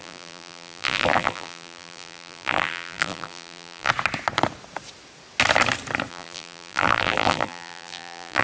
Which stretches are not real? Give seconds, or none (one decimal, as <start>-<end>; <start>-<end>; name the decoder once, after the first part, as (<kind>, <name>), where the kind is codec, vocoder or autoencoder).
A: 0.0-3.9 (vocoder, BigVGAN v2); 6.1-8.4